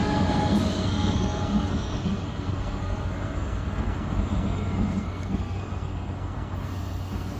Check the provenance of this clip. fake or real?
fake